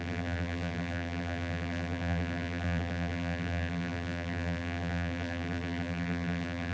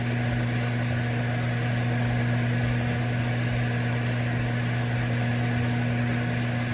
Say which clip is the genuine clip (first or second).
second